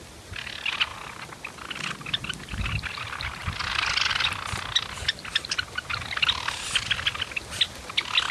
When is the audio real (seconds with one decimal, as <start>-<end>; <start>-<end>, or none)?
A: 0.0-8.3